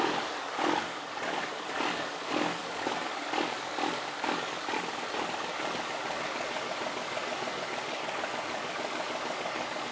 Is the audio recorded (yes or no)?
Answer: no